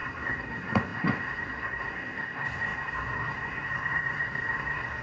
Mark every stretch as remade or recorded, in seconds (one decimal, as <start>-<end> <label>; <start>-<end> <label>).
0.0-5.0 remade

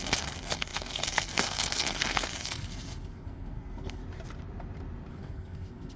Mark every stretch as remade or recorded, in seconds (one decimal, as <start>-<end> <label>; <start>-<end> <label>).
0.0-4.0 remade; 4.0-5.1 recorded; 5.1-6.0 remade

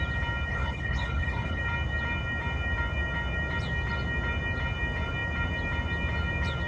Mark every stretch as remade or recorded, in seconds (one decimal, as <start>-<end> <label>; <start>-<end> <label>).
0.0-0.5 recorded; 0.5-1.6 remade; 1.6-6.7 recorded